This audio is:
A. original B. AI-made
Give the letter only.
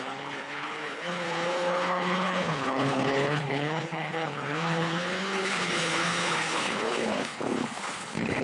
B